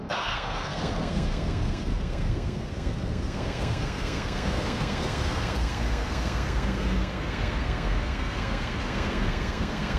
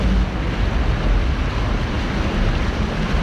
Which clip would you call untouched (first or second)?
second